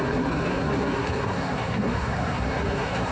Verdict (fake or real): fake